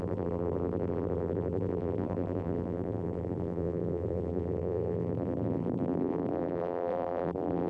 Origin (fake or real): fake